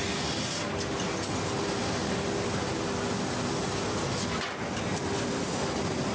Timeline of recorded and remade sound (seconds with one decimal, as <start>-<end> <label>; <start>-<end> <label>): 0.0-6.1 recorded